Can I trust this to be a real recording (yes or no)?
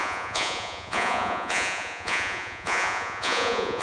no